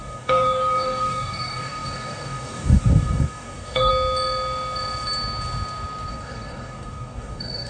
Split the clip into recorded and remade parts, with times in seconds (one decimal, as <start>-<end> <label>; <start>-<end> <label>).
0.0-3.9 remade; 3.9-6.1 recorded; 6.1-7.7 remade